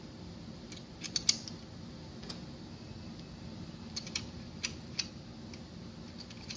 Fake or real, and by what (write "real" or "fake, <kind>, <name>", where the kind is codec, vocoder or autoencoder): real